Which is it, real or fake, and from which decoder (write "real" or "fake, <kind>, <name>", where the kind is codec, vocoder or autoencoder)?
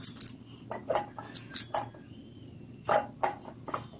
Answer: real